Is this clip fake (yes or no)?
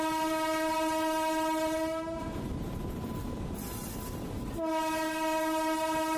no